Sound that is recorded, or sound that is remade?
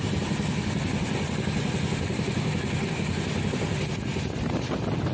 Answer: recorded